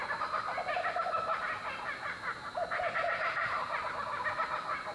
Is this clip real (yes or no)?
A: yes